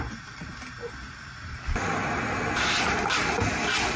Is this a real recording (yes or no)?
yes